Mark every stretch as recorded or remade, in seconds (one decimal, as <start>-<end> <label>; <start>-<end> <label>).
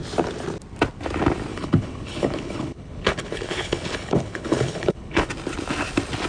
0.0-1.5 recorded; 1.5-5.3 remade; 5.3-6.3 recorded